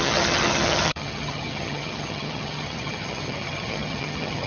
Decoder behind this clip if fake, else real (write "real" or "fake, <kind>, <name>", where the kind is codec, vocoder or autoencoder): fake, vocoder, HiFi-GAN